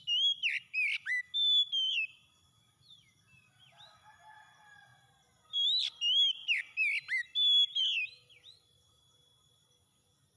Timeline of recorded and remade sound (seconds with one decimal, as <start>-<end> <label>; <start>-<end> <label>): 0.0-10.4 recorded